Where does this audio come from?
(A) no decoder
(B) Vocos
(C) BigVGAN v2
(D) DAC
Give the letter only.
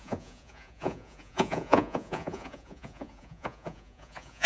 B